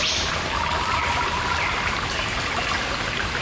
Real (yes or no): yes